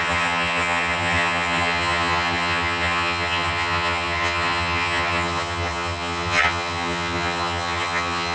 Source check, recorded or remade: remade